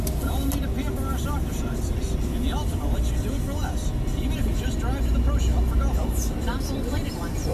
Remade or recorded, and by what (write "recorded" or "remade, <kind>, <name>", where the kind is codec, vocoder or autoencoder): recorded